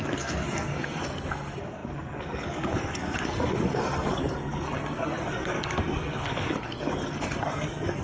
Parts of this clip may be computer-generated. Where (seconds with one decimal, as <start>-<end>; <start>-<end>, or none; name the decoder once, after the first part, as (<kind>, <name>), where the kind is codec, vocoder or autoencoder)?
0.0-8.0 (codec, SNAC)